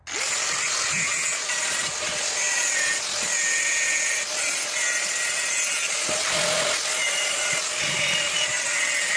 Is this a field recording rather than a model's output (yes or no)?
yes